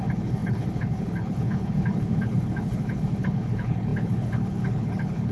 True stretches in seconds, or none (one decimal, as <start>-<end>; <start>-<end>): none